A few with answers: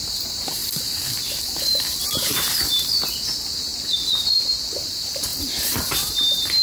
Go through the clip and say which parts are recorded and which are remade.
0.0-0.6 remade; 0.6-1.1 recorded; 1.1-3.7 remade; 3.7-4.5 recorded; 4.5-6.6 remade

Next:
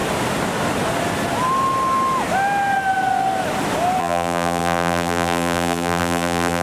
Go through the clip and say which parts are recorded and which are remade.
0.0-4.0 recorded; 4.0-6.6 remade

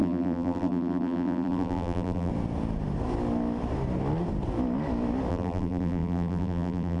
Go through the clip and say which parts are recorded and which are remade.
0.0-2.3 remade; 2.3-5.3 recorded; 5.3-7.0 remade